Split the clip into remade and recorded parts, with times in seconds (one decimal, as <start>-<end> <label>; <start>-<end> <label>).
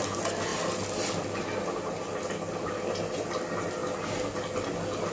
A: 0.0-5.1 recorded